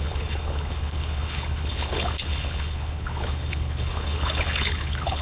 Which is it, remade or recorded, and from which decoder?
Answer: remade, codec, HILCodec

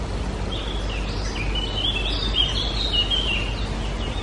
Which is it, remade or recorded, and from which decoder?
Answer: recorded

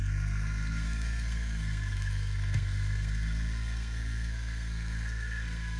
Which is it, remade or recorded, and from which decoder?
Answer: remade, codec, SNAC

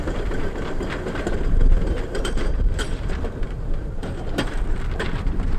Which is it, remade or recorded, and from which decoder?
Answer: remade, vocoder, BigVGAN v2